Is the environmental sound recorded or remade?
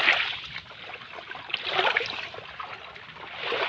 recorded